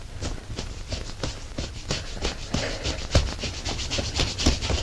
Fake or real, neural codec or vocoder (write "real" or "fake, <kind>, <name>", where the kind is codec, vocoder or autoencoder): fake, vocoder, BigVGAN v2